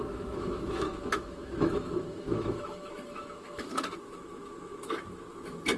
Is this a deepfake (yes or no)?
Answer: yes